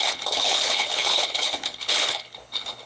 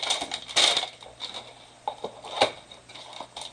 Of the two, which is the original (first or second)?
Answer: second